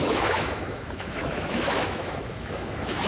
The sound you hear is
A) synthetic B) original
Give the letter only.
A